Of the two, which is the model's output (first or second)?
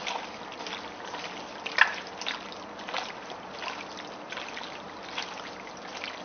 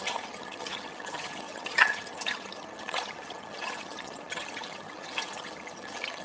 second